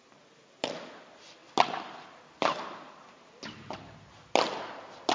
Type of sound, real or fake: real